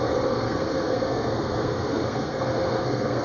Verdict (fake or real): fake